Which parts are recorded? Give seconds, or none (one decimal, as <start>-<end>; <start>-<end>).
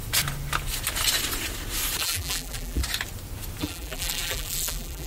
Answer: 0.0-2.0; 2.8-3.6